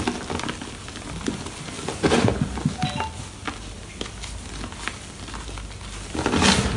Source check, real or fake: real